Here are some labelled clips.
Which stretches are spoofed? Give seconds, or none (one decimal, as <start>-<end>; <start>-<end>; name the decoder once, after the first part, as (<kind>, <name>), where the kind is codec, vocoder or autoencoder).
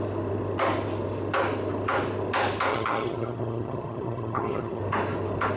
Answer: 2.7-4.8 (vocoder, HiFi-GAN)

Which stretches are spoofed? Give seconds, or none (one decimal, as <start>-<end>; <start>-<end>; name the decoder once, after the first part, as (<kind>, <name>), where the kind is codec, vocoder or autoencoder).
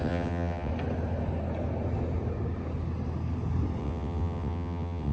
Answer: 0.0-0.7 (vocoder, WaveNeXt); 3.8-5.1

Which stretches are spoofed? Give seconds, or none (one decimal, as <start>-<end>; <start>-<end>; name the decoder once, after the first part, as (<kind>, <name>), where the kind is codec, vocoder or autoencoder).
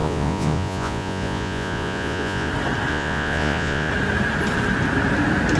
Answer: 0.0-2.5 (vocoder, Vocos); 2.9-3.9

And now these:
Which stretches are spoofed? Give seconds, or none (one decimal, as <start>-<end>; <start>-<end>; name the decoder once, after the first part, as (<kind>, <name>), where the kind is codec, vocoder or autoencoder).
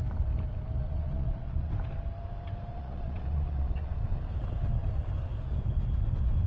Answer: 0.8-1.7 (vocoder, Vocos); 2.7-4.2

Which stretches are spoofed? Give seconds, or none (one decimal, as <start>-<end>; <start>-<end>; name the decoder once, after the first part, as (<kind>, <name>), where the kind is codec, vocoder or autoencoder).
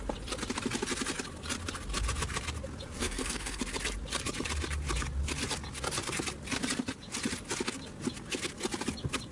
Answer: 3.0-3.6 (codec, SNAC)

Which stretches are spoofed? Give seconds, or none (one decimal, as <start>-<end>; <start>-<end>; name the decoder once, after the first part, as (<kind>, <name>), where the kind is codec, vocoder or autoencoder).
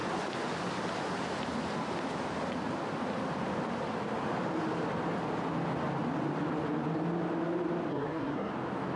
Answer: 7.9-8.5 (codec, SNAC)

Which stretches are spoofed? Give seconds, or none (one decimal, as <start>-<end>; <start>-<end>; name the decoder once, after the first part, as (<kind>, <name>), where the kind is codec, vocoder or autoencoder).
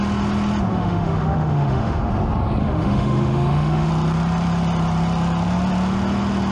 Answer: 0.7-2.1 (autoencoder, DAC-VAE); 2.6-3.9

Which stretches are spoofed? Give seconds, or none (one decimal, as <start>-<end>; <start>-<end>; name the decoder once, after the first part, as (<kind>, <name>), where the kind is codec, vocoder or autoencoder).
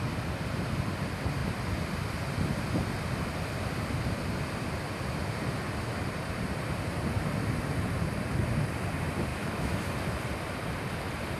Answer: 9.3-9.9 (autoencoder, DAC-VAE)